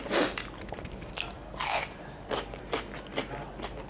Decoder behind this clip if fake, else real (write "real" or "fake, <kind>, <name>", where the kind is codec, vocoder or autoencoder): real